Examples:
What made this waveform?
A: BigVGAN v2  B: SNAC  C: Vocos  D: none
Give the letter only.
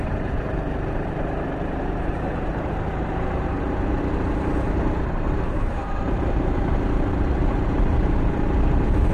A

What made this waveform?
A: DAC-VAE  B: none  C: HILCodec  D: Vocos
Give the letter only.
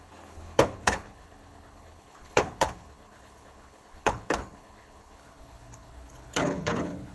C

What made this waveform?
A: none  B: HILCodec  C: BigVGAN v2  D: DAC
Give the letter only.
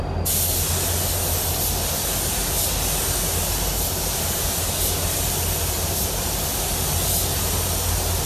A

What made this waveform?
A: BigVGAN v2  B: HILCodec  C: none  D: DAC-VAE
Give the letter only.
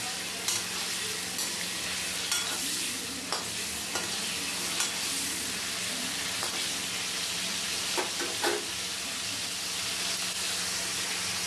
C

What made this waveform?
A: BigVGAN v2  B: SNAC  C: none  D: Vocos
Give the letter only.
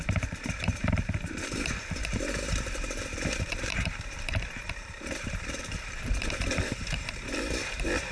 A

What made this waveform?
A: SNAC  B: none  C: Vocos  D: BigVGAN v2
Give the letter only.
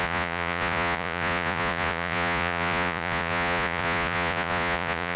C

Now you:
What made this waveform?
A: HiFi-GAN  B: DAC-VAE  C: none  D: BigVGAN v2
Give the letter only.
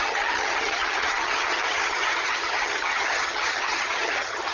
A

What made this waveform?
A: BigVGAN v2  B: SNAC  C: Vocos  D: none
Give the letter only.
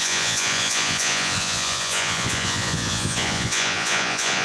C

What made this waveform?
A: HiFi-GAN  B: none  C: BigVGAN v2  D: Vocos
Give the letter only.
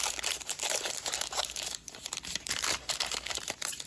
C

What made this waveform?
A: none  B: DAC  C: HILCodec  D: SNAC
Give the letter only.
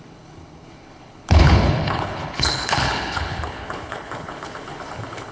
C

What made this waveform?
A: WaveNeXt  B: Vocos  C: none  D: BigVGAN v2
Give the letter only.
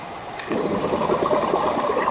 D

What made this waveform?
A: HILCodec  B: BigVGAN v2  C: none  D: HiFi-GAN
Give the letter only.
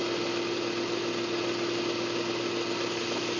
C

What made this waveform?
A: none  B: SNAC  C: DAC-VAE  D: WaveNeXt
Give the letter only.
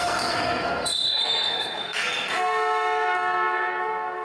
B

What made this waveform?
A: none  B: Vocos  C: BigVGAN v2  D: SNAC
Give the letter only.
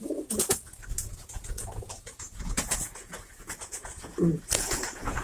B